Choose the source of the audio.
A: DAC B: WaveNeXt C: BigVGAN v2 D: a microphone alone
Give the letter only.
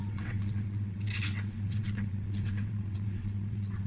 B